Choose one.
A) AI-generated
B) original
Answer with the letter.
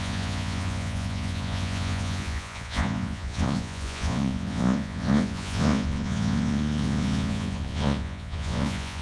A